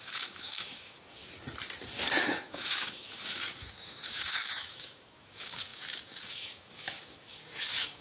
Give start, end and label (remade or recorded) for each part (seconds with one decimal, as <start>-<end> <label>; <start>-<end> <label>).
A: 0.0-1.2 remade; 1.2-2.2 recorded; 2.2-8.0 remade